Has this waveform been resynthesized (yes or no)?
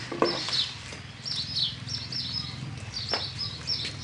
no